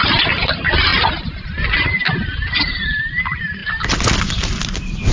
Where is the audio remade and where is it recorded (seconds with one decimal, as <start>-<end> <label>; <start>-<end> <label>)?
0.0-5.1 recorded